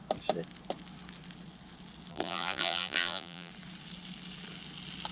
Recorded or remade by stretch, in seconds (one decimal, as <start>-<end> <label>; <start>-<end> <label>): 0.0-2.1 recorded; 2.1-3.5 remade; 3.5-5.1 recorded